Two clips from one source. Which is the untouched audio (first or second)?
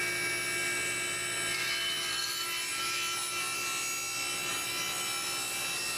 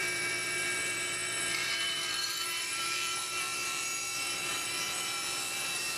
first